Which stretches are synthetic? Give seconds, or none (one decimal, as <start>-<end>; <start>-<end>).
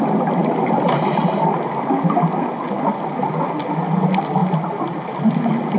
none